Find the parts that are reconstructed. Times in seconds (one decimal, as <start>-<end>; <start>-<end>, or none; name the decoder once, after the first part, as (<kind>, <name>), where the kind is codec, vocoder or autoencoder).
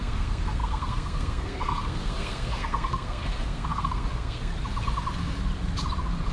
0.0-4.5 (codec, SNAC)